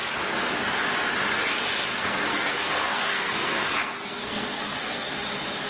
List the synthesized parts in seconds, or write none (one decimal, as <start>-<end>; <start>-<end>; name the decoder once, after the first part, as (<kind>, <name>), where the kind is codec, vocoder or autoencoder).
1.9-5.1 (codec, SNAC)